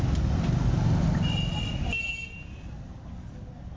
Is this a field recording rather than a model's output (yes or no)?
yes